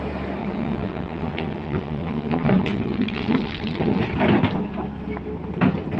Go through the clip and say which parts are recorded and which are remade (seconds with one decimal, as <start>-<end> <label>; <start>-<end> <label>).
0.0-0.4 recorded; 0.4-4.0 remade; 4.0-6.0 recorded